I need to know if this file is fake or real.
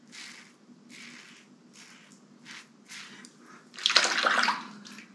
real